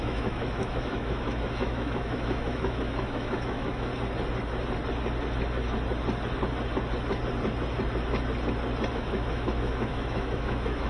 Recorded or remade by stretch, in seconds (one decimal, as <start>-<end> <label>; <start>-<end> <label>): 0.0-3.9 remade; 3.9-8.9 recorded; 8.9-10.9 remade